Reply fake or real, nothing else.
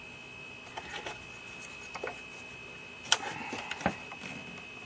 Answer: real